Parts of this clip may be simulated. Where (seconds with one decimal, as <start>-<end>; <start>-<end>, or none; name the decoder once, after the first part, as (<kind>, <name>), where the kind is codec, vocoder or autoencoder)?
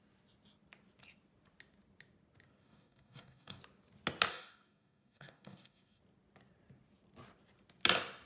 2.6-3.6 (codec, DAC); 4.3-6.0